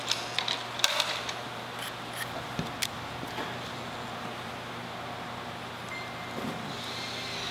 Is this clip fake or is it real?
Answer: real